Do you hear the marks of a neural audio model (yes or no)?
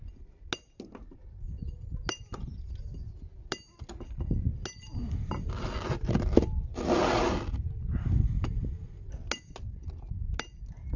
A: no